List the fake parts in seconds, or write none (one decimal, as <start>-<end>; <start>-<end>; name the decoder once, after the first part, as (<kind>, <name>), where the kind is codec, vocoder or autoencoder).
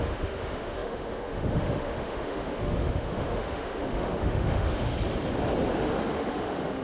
0.0-4.9 (autoencoder, DAC-VAE); 5.8-6.8